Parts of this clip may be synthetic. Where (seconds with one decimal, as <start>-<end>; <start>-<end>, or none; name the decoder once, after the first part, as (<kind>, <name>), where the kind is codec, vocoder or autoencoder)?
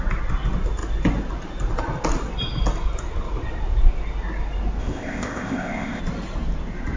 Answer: 4.8-6.0 (codec, ZipCodec)